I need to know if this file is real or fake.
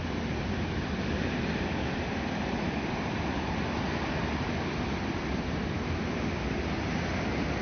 real